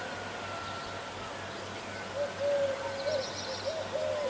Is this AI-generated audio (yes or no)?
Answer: no